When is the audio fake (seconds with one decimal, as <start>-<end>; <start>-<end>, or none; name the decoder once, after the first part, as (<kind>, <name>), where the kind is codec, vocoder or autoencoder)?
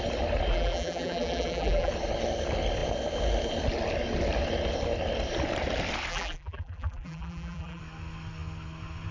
0.5-1.9 (vocoder, BigVGAN v2); 6.1-7.8